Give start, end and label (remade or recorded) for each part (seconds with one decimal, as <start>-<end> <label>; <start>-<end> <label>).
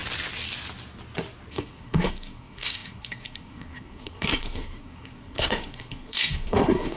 0.0-1.5 recorded; 1.5-7.0 remade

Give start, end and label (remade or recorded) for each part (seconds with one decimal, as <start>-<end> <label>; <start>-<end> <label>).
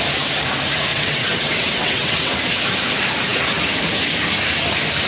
0.0-0.9 recorded; 0.9-2.3 remade; 2.3-5.1 recorded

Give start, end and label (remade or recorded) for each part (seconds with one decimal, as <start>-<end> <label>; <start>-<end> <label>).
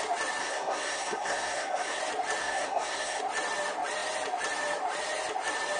0.0-0.4 recorded; 0.4-2.0 remade; 2.0-2.4 recorded; 2.4-3.2 remade; 3.2-5.8 recorded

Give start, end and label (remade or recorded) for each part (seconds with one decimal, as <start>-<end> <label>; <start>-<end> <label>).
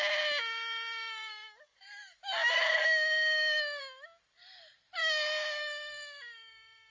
0.0-0.4 recorded; 0.4-3.8 remade; 3.8-5.0 recorded; 5.0-6.9 remade